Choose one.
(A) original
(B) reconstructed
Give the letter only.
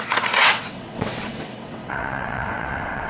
B